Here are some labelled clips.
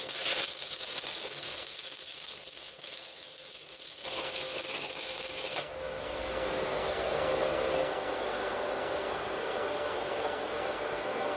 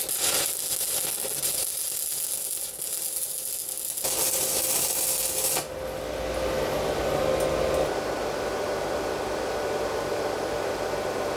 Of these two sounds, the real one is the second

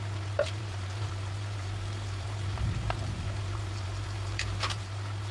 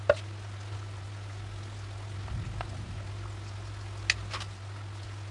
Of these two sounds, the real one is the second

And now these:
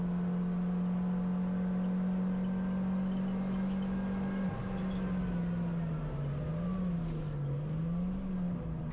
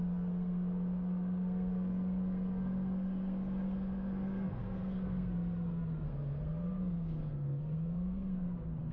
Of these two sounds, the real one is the first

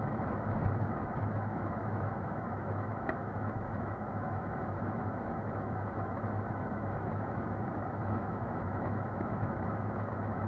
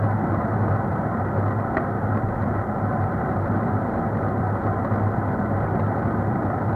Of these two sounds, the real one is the second